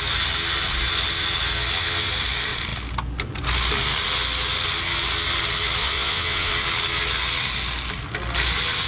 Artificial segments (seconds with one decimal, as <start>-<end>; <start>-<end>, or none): 5.8-6.5